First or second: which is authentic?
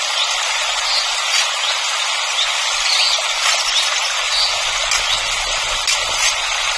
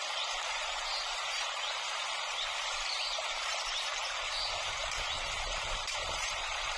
first